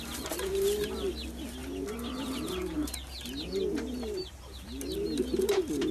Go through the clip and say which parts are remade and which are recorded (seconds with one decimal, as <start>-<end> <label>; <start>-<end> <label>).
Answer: 0.0-5.9 recorded